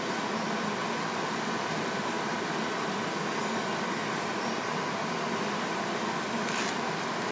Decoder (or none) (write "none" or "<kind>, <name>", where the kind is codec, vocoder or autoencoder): none